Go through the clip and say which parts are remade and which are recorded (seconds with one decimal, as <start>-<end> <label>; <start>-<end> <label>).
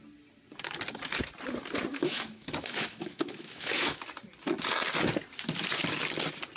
0.0-1.9 recorded; 1.9-4.0 remade; 4.0-6.6 recorded